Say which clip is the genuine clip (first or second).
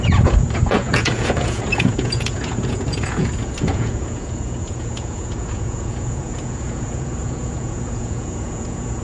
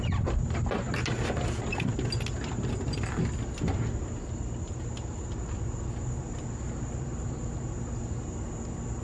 second